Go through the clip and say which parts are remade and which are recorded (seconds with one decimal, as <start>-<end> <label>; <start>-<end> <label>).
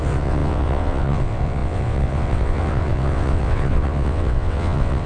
0.0-5.1 remade